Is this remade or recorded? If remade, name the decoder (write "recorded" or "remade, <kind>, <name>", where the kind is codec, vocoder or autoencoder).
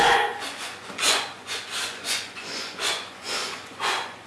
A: remade, vocoder, Vocos